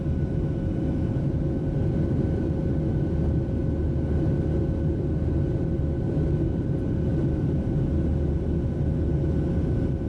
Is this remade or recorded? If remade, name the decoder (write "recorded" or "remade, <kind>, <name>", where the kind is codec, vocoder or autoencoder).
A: recorded